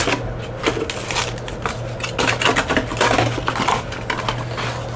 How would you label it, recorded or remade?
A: recorded